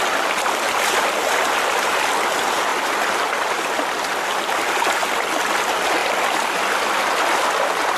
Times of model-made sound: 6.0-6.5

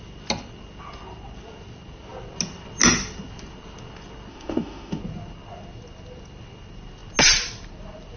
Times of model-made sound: 4.3-5.0

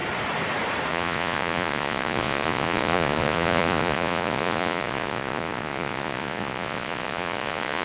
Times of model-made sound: 0.9-7.8

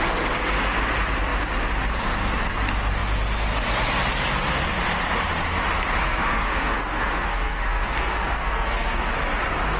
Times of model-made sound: 6.0-9.0

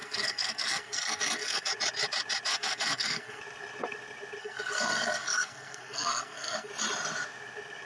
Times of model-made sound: 0.0-1.7; 2.5-3.4; 4.4-6.7